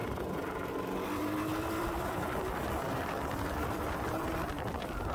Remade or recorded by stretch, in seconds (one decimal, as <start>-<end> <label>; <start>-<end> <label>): 0.0-1.5 recorded; 1.5-4.3 remade; 4.3-5.1 recorded